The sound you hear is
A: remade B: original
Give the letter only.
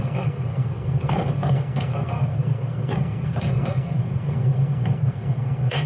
A